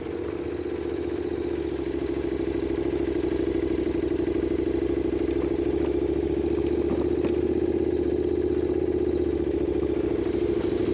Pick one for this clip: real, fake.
real